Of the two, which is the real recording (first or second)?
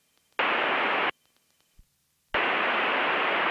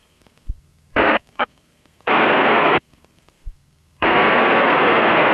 first